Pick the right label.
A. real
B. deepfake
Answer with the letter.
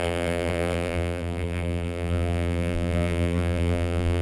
B